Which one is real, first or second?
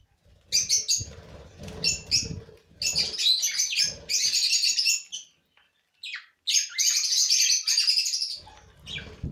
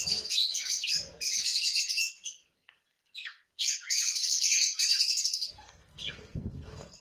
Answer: first